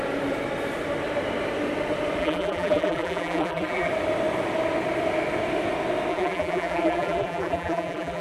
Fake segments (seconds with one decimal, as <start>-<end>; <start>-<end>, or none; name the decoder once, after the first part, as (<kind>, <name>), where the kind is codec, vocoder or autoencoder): 2.2-3.9 (vocoder, BigVGAN v2); 6.1-8.2